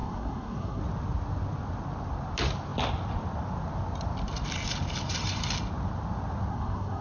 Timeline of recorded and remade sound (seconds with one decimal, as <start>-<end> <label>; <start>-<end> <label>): 0.0-0.8 remade; 0.8-6.5 recorded; 6.5-7.0 remade